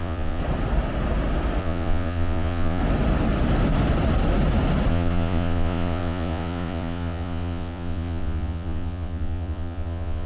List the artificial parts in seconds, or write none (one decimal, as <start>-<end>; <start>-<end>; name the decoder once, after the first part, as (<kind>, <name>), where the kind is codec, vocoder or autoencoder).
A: 0.0-0.4 (vocoder, Vocos); 1.6-2.8; 4.9-10.3